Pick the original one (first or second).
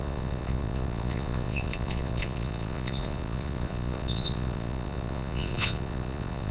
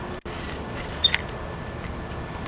second